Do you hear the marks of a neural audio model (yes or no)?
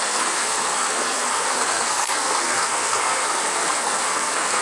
yes